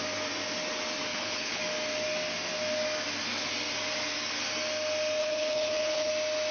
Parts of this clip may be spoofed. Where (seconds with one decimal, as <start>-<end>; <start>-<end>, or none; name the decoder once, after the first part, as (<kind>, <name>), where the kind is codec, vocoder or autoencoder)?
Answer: 1.1-1.6 (codec, HILCodec); 5.2-6.1